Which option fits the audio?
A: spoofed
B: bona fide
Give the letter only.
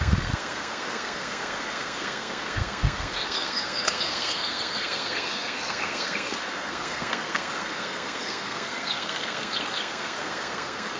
A